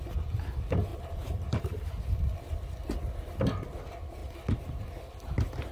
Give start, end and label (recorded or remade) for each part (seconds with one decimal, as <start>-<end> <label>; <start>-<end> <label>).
0.0-0.9 recorded; 0.9-1.9 remade; 1.9-5.7 recorded